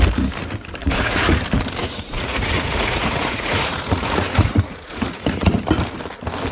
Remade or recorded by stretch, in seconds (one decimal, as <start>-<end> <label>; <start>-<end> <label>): 0.0-0.8 recorded; 0.8-1.4 remade; 1.4-1.8 recorded; 1.8-5.6 remade; 5.6-6.5 recorded